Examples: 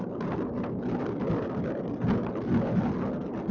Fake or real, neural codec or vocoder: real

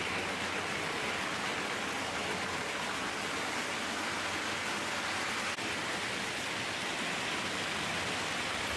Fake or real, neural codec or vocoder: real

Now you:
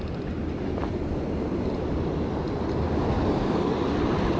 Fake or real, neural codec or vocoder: real